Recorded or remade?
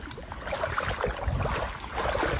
recorded